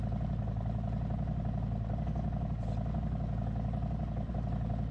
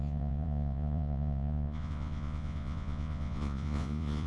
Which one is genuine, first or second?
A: first